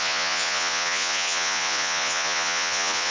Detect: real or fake fake